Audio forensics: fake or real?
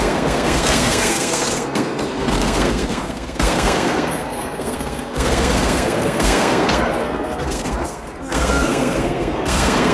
fake